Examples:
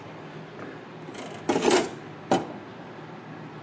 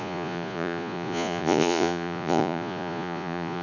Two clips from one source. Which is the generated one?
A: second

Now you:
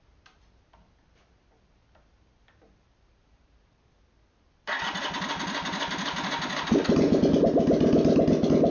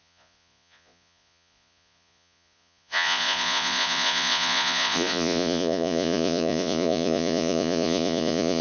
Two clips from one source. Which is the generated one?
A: second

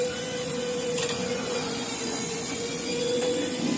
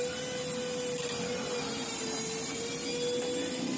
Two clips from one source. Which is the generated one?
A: first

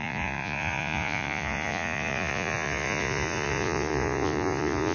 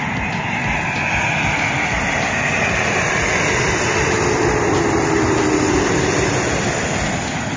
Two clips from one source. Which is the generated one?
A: first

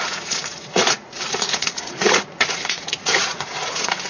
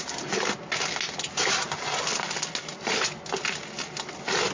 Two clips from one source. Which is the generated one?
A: first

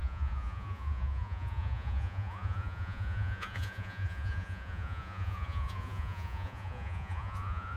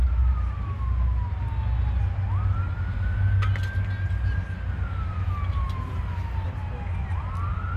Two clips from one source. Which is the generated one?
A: first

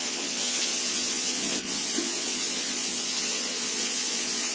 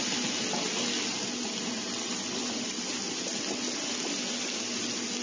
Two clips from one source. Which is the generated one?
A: first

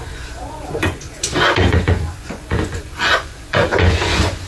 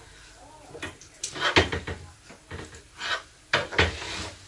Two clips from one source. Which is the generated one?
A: first